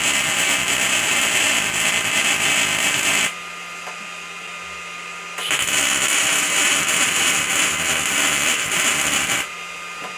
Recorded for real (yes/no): yes